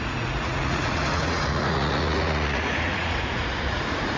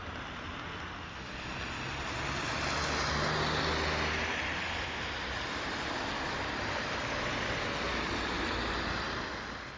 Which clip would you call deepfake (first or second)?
first